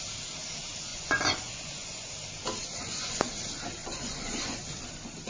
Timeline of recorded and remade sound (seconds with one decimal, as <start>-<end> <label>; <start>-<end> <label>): 0.0-0.9 recorded; 0.9-2.1 remade; 2.1-2.6 recorded; 2.6-3.3 remade; 3.3-3.8 recorded; 3.8-4.8 remade; 4.8-5.3 recorded